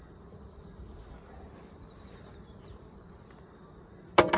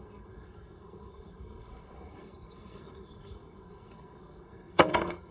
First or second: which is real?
first